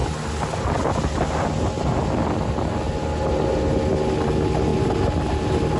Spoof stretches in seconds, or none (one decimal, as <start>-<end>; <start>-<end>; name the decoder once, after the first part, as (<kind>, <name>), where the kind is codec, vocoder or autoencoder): none